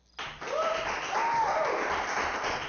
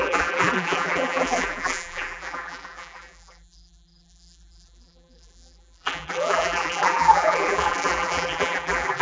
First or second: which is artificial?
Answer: second